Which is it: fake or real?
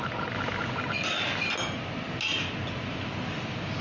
real